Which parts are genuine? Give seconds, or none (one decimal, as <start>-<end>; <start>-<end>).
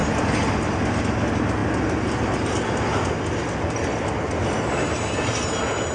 0.0-5.9